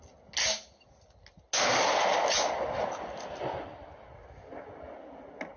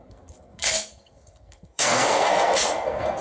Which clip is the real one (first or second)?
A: first